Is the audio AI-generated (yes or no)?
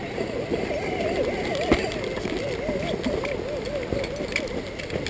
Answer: no